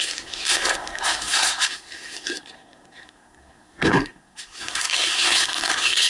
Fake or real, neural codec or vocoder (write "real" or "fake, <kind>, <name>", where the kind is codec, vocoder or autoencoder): fake, codec, SNAC